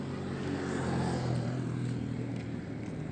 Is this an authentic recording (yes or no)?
yes